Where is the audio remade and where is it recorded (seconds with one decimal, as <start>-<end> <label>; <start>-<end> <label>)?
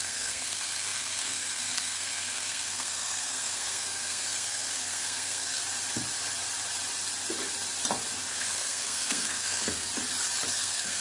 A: 0.0-5.6 remade; 5.6-8.3 recorded; 8.3-9.9 remade; 9.9-10.5 recorded; 10.5-11.0 remade